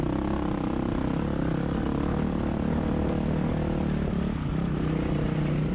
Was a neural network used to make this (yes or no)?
no